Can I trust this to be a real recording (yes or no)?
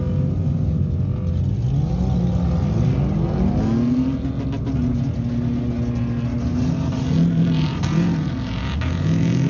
yes